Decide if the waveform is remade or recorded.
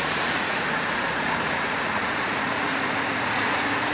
remade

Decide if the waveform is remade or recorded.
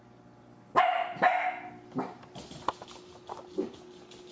recorded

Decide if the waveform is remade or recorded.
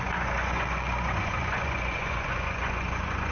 remade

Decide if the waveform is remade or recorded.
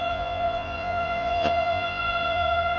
remade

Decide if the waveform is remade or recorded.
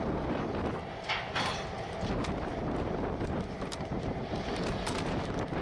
recorded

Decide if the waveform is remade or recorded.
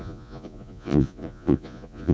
remade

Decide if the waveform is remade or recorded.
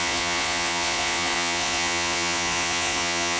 remade